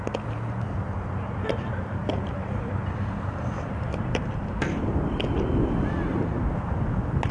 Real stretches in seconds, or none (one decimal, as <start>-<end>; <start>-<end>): 0.0-2.0; 4.6-7.3